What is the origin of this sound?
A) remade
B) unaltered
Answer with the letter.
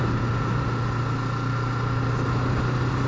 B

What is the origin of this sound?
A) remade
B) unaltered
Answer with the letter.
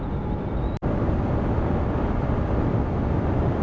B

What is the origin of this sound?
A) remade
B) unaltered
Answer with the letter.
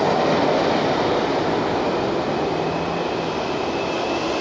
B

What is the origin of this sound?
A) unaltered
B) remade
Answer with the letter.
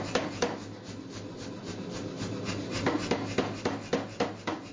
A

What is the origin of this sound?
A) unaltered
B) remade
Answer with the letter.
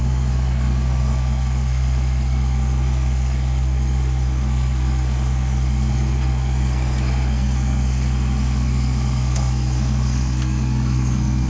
B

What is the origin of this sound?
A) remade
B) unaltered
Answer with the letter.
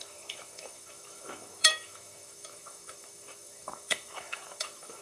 A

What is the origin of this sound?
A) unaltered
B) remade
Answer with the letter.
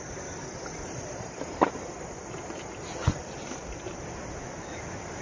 A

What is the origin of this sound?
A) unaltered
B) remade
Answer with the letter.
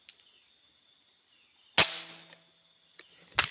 A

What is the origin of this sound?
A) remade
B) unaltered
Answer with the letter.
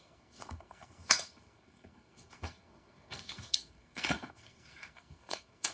A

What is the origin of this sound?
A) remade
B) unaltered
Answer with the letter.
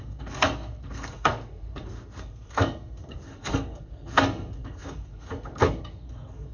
A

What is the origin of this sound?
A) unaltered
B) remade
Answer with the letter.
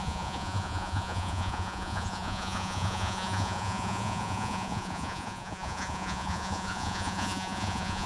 B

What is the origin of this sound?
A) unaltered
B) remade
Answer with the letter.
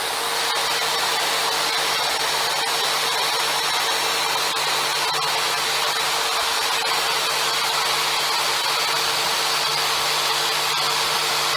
A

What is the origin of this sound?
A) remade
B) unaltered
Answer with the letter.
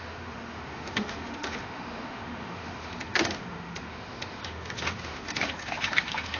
A